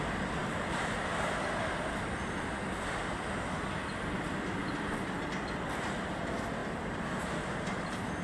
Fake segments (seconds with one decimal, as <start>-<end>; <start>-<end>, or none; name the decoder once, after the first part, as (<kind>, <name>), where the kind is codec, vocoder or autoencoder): none